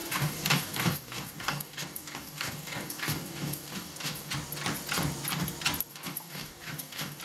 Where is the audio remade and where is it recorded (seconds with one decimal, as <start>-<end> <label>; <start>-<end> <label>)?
0.0-4.3 remade; 4.3-5.9 recorded; 5.9-7.2 remade